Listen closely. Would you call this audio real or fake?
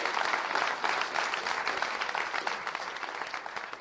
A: real